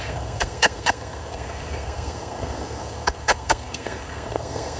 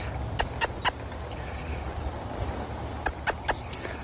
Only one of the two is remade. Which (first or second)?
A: first